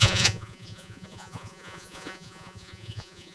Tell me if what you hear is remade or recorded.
remade